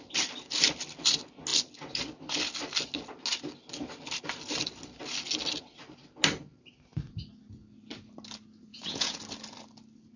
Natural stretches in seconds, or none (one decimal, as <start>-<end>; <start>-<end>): 0.0-8.7; 9.2-10.2

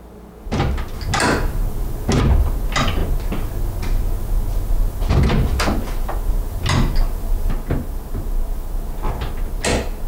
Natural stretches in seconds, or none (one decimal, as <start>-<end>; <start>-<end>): 0.0-10.1